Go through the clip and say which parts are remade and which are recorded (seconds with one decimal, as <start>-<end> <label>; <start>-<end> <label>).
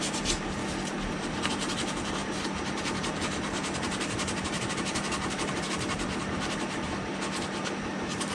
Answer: 0.0-0.6 remade; 0.6-1.5 recorded; 1.5-8.3 remade